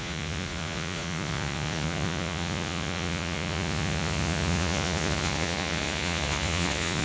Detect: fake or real fake